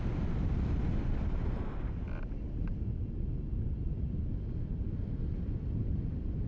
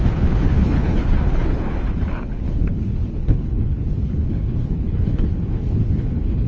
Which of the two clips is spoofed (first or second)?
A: second